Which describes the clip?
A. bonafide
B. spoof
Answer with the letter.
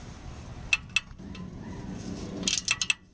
A